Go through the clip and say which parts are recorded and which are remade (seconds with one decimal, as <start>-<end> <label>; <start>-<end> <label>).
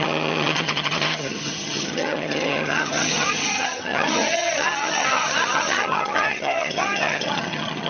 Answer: 0.0-7.9 remade